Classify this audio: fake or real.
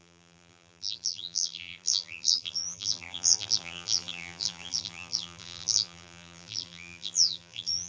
fake